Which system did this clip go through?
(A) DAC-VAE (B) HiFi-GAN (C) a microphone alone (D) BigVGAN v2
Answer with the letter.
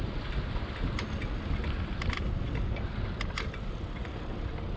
C